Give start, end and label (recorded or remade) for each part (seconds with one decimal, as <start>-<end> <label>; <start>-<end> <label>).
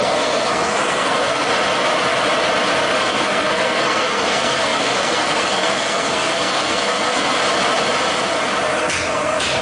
0.0-1.5 remade; 1.5-3.0 recorded; 3.0-7.4 remade; 7.4-8.8 recorded; 8.8-9.6 remade